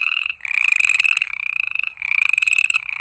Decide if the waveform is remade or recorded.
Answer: remade